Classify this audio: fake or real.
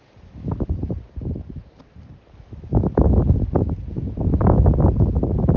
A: real